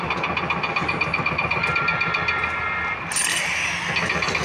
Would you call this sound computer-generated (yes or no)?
no